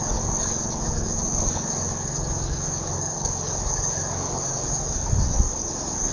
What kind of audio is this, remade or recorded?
remade